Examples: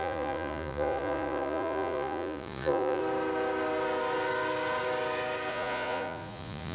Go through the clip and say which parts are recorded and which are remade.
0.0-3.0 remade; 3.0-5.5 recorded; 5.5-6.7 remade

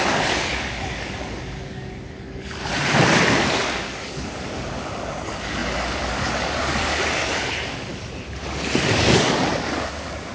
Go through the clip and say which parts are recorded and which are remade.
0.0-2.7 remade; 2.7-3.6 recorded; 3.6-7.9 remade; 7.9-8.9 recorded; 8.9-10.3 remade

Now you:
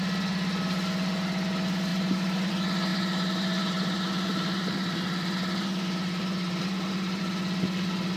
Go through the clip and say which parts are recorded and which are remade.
0.0-1.9 recorded; 1.9-2.5 remade; 2.5-2.9 recorded; 2.9-7.2 remade; 7.2-8.2 recorded